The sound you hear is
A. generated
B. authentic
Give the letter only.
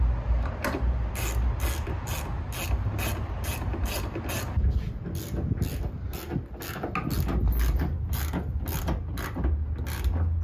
B